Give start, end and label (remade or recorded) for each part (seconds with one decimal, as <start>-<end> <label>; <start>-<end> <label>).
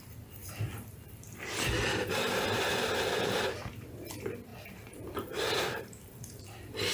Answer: 0.0-6.9 remade